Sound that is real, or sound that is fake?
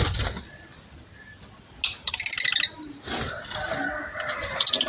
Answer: real